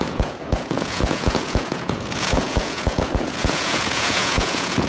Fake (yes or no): yes